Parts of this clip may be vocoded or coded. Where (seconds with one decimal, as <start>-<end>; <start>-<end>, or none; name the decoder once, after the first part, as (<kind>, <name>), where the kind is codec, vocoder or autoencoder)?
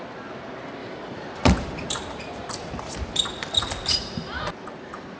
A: 0.8-3.9 (vocoder, BigVGAN v2)